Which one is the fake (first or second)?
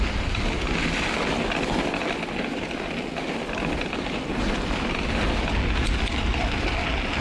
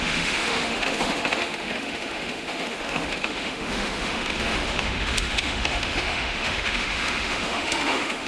second